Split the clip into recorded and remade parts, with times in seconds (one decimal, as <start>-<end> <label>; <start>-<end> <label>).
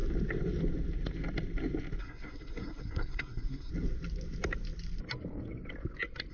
0.0-2.0 recorded; 2.0-3.7 remade; 3.7-6.3 recorded